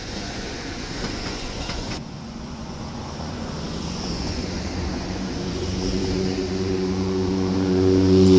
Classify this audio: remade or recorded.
remade